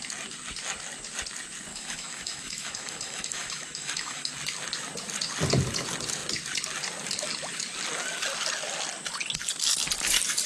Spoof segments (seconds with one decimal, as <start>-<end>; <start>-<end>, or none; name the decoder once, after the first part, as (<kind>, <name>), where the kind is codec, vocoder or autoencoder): 1.7-4.3 (autoencoder, DAC-VAE)